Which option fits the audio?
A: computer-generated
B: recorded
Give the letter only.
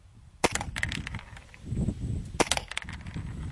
A